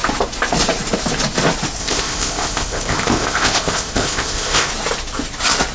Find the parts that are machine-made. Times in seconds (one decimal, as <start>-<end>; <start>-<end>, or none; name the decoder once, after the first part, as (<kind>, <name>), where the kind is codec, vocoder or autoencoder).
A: 1.8-4.7 (codec, ZipCodec)